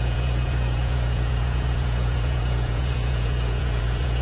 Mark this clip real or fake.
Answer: fake